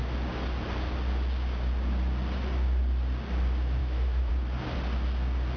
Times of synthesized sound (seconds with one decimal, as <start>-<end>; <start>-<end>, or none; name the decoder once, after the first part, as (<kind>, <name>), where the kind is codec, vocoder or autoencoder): 3.8-4.3 (autoencoder, DAC-VAE)